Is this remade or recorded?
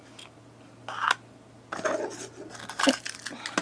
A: recorded